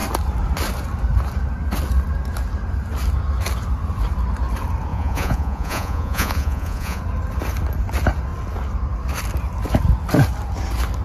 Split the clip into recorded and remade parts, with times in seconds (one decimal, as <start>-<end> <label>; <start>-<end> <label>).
0.0-4.9 recorded; 4.9-7.0 remade; 7.0-11.0 recorded